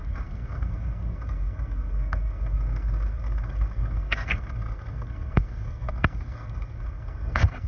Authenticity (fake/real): fake